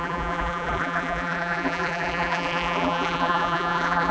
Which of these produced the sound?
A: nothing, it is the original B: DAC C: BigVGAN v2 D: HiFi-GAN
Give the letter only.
C